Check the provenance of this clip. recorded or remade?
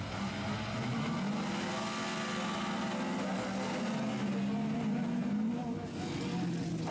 recorded